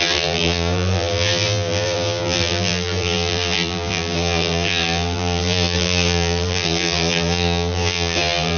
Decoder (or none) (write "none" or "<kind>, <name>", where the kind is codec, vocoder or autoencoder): vocoder, BigVGAN v2